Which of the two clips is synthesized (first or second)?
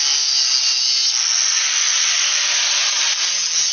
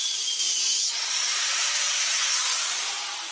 second